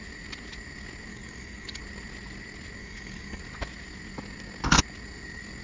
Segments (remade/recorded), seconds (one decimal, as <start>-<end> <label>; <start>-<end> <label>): 0.0-1.1 recorded; 1.1-1.8 remade; 1.8-2.8 recorded; 2.8-3.4 remade; 3.4-5.6 recorded